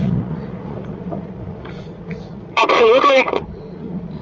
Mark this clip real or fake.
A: fake